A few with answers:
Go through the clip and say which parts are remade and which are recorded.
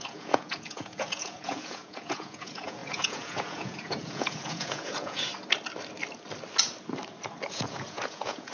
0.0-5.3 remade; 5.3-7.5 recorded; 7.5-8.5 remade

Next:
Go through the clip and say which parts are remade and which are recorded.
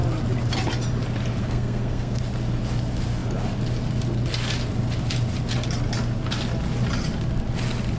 0.0-1.4 recorded; 1.4-2.2 remade; 2.2-8.0 recorded